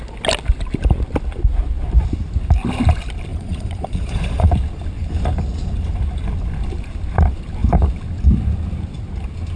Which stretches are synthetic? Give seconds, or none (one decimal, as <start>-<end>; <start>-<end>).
3.3-4.5